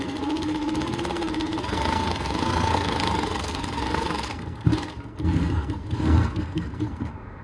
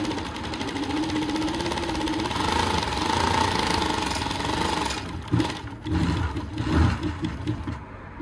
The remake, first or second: first